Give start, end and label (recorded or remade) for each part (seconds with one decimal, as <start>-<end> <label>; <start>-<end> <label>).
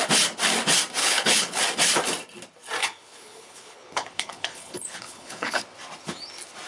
0.0-1.0 recorded; 1.0-1.6 remade; 1.6-2.8 recorded; 2.8-5.6 remade; 5.6-6.7 recorded